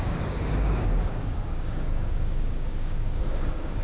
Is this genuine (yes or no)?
no